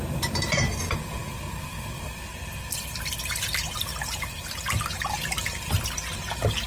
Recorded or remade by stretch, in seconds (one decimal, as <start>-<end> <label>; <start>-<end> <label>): 0.0-6.7 recorded